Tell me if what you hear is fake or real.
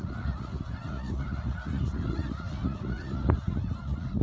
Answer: fake